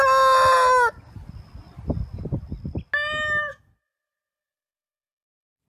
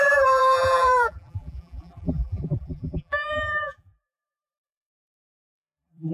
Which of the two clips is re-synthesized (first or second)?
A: second